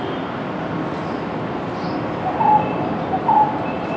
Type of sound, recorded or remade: recorded